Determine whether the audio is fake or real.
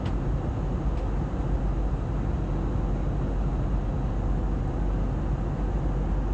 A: real